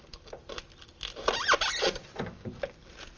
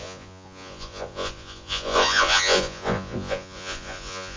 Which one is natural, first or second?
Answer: first